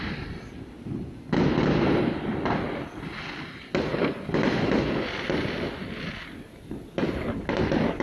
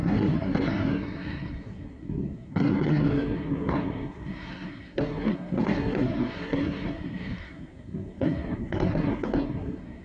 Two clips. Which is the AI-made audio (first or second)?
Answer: second